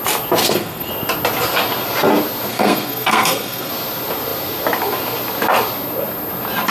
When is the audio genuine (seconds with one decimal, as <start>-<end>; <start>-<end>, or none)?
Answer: 0.0-0.4; 0.9-2.5; 3.7-6.7